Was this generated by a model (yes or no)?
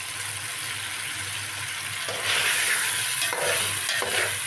no